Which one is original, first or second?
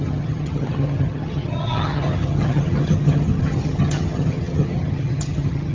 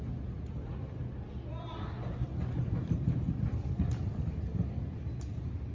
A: second